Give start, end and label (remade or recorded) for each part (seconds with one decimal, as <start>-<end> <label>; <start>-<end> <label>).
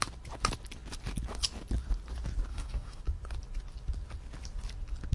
0.0-2.5 recorded; 2.5-3.0 remade; 3.0-5.1 recorded